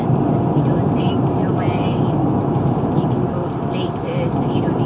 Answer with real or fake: real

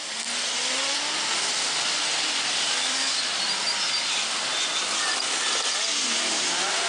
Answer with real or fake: real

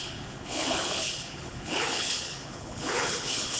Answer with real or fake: fake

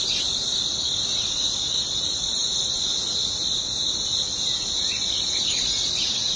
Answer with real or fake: real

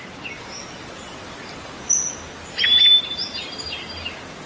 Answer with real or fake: real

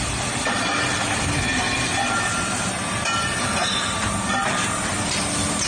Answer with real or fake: real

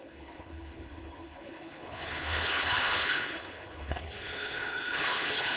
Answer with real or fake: fake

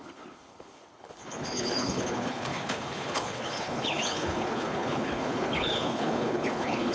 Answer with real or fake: fake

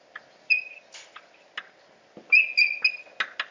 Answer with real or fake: real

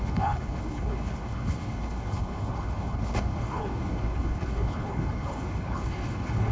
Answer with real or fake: fake